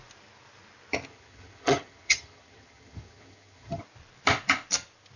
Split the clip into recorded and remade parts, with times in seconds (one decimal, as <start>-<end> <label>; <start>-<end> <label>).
0.0-1.1 recorded; 1.1-3.8 remade; 3.8-5.2 recorded